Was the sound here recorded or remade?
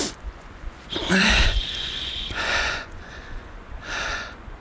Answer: remade